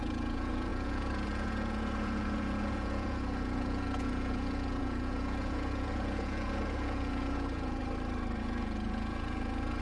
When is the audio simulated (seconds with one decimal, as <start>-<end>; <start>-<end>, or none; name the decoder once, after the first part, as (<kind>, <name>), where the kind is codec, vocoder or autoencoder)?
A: 0.0-7.8 (vocoder, Vocos); 8.4-9.8